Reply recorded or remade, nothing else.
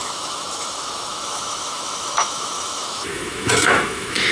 remade